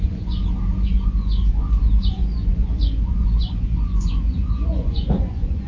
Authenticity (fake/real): fake